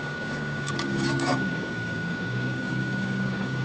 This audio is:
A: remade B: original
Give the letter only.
A